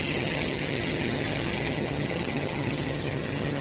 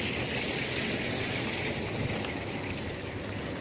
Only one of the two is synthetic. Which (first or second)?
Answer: first